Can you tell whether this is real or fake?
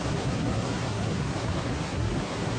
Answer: fake